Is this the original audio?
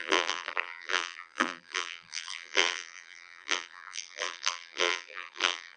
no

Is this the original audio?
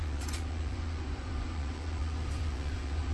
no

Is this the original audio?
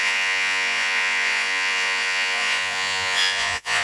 no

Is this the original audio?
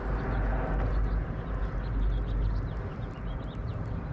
yes